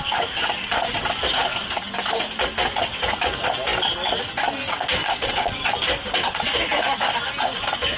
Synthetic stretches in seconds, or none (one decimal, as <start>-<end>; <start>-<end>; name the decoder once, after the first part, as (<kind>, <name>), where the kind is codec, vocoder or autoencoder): 5.0-5.7 (vocoder, Vocos)